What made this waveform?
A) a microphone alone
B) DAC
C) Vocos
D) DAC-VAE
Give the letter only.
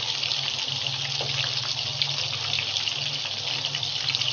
A